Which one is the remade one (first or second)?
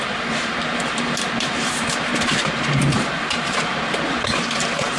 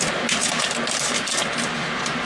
first